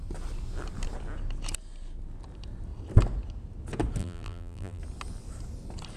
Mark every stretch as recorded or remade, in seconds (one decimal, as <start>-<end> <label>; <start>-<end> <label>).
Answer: 0.0-4.0 recorded; 4.0-4.8 remade; 4.8-6.0 recorded